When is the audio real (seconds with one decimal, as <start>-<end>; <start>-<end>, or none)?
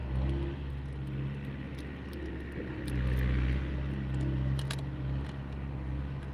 0.0-6.3